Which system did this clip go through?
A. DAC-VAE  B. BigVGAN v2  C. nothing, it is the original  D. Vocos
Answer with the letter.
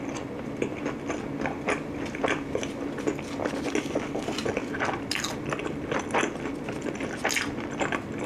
C